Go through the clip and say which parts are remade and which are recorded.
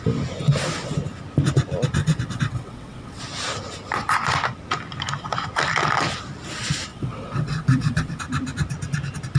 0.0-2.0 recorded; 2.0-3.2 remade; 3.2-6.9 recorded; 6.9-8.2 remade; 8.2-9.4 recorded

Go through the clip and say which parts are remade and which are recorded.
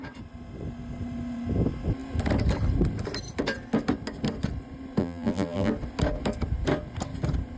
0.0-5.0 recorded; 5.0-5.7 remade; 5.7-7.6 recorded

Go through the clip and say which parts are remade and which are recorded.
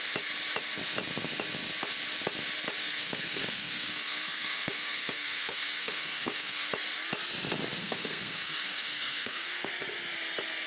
0.0-2.8 recorded; 2.8-6.7 remade; 6.7-7.8 recorded; 7.8-9.7 remade; 9.7-10.7 recorded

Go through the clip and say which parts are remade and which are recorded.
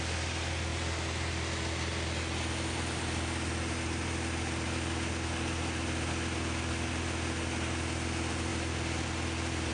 0.0-9.7 recorded